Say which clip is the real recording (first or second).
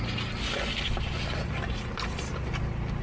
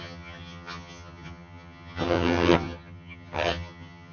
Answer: first